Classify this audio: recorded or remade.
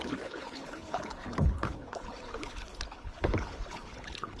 remade